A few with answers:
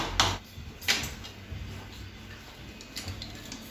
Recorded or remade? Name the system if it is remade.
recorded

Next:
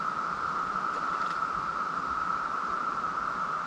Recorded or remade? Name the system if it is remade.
recorded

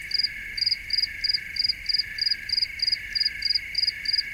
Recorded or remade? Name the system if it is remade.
recorded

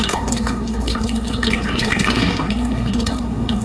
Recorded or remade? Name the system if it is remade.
remade, codec, SNAC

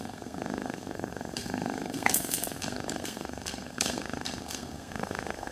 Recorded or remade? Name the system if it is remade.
remade, codec, SNAC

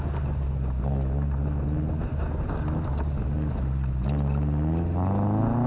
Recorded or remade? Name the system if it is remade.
recorded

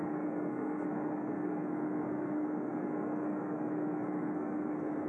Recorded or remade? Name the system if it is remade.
remade, codec, SNAC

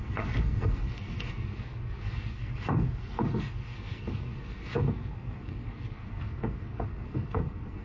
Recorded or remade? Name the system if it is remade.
remade, codec, SNAC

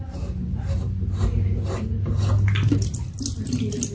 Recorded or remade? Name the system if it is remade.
recorded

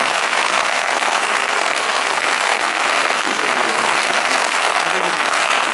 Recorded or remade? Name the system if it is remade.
remade, codec, SNAC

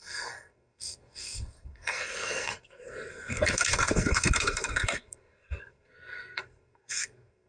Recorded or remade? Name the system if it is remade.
remade, codec, SNAC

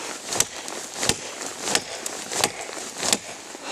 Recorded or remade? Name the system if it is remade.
recorded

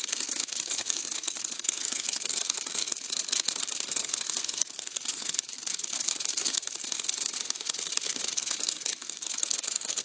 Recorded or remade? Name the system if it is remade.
remade, codec, SNAC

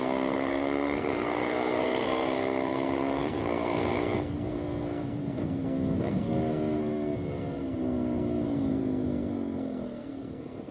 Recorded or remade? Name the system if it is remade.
remade, codec, SNAC